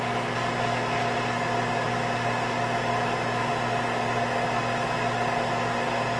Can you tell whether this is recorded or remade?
recorded